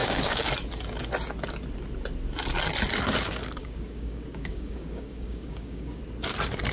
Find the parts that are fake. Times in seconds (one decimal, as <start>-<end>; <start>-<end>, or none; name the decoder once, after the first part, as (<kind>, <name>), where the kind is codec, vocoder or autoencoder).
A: 0.0-0.5 (codec, DAC); 3.6-6.0